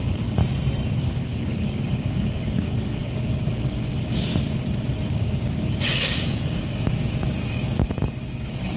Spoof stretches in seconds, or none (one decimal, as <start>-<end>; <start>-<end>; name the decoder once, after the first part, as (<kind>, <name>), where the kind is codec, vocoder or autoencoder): 0.0-0.4 (codec, DAC); 1.0-4.3; 5.1-8.8